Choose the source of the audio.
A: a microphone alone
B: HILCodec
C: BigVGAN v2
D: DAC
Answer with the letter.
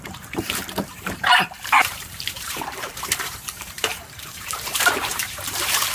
C